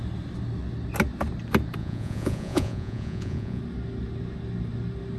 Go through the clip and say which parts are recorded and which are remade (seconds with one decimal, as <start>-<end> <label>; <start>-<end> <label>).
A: 0.0-1.8 recorded; 1.8-3.6 remade; 3.6-5.2 recorded